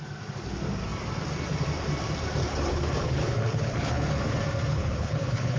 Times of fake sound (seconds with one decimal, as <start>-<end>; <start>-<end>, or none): 2.4-4.2; 4.7-5.6